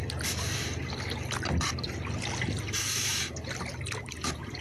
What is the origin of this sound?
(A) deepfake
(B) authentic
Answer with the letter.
B